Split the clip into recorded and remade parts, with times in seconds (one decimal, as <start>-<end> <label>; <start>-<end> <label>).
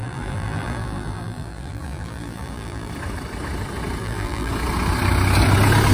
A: 0.0-2.9 remade; 2.9-4.0 recorded; 4.0-4.5 remade; 4.5-5.9 recorded